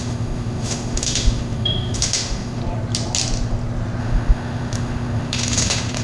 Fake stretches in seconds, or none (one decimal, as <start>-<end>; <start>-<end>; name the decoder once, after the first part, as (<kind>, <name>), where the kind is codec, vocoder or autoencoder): 0.0-2.6 (autoencoder, DAC-VAE); 4.0-6.0

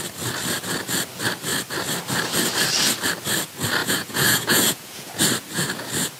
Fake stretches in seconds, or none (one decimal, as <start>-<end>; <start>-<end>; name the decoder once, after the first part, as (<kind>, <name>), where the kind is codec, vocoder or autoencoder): 3.8-5.2 (vocoder, Vocos)

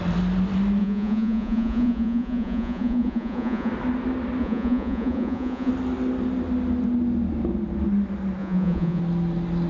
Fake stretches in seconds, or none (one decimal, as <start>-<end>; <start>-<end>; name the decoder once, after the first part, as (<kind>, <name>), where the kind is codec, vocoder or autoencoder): 0.8-3.7 (vocoder, Vocos); 4.4-5.7; 8.4-9.0

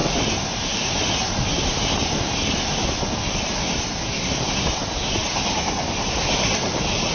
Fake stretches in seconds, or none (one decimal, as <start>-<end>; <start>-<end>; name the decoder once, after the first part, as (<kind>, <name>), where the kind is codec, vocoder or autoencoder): none

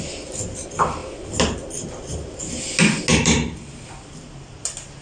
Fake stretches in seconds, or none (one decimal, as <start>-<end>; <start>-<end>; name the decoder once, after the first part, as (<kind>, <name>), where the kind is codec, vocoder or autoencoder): 3.1-3.7 (vocoder, BigVGAN v2)

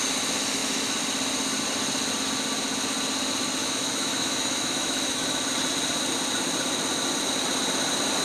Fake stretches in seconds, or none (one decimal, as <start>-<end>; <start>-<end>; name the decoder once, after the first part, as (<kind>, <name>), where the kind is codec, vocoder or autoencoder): 3.6-5.5 (autoencoder, DAC-VAE)

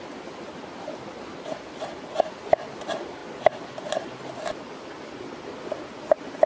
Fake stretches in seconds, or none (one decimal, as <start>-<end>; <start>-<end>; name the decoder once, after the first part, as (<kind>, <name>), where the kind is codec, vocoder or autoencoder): none

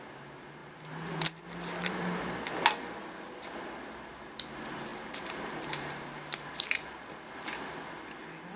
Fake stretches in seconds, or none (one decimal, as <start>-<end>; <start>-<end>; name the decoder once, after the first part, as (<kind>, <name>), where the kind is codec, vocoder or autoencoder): 0.6-2.4 (vocoder, BigVGAN v2); 4.9-7.1